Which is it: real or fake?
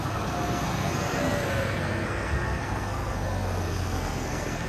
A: fake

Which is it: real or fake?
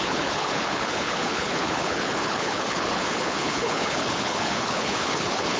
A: fake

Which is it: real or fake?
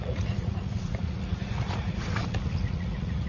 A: fake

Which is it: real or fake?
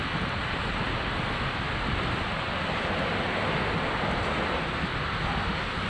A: real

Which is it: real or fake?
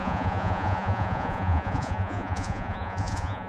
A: fake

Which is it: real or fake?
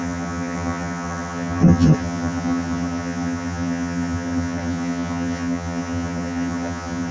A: fake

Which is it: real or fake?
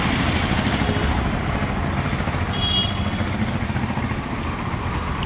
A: real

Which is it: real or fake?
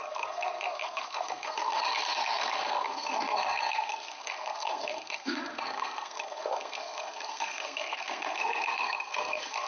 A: fake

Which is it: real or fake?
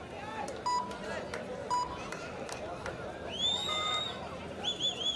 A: real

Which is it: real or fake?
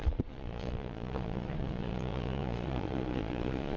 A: fake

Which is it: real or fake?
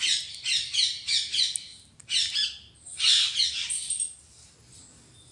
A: real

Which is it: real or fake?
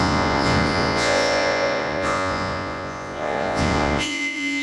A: fake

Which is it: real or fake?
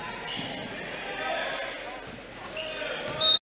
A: real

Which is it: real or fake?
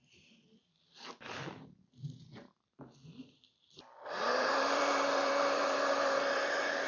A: fake